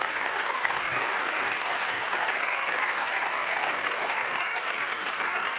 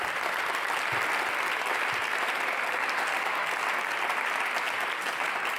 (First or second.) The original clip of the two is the second